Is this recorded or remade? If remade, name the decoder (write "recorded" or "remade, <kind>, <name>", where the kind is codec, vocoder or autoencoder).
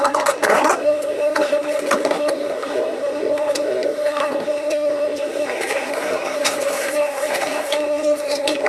remade, codec, SNAC